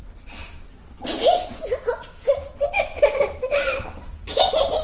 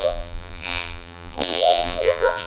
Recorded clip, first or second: first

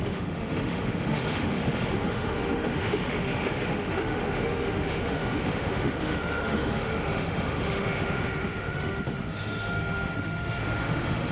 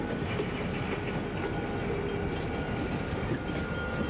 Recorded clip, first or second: second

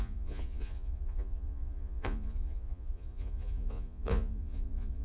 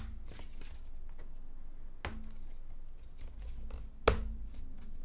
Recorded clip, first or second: second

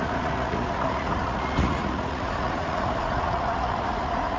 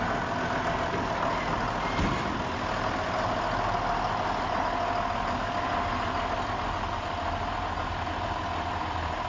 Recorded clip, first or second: second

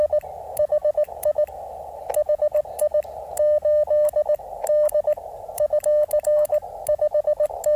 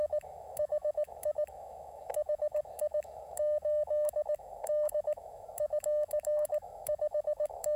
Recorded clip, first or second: first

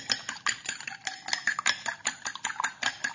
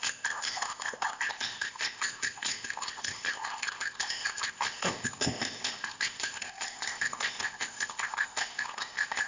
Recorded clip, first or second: first